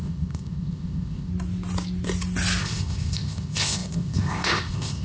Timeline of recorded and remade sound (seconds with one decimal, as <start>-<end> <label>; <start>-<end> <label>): 0.0-1.3 remade; 1.3-2.6 recorded; 2.6-5.0 remade